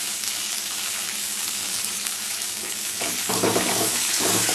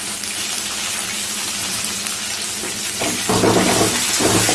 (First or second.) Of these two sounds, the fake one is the first